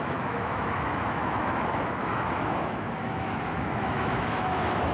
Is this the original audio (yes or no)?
no